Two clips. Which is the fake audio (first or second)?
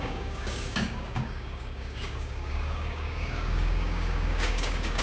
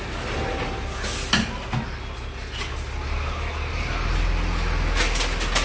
first